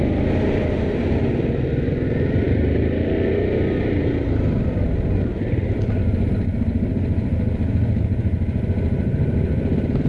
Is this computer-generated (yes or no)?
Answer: yes